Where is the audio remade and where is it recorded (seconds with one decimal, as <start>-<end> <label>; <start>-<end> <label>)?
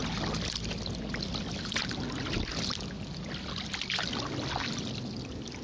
0.0-5.6 recorded